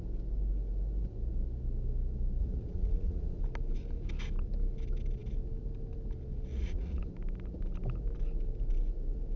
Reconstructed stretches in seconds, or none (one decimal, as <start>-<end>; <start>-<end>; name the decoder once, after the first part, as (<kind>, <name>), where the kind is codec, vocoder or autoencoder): 2.4-3.4 (vocoder, Vocos); 6.5-7.1